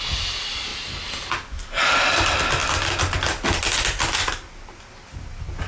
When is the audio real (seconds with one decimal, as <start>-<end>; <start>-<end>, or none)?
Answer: 0.0-5.7